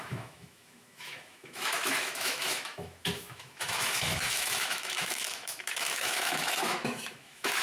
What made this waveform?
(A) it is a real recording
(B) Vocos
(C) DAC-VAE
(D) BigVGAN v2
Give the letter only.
C